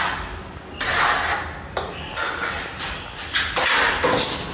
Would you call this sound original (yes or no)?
yes